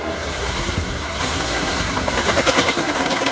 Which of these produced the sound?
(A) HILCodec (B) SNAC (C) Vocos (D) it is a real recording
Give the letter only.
B